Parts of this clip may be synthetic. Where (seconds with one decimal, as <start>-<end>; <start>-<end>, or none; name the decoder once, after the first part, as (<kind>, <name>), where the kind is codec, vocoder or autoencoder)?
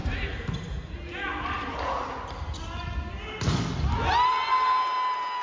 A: none